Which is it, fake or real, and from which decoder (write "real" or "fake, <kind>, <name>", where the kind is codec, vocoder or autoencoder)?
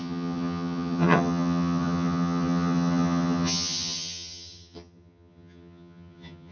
fake, vocoder, HiFi-GAN